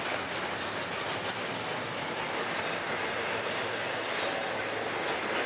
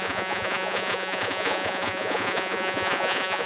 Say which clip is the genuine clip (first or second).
first